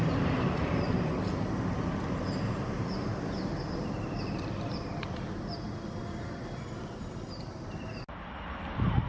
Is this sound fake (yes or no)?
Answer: no